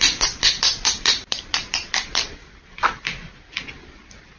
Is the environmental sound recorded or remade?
remade